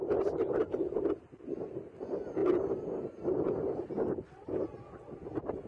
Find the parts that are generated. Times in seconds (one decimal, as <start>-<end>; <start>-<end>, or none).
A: none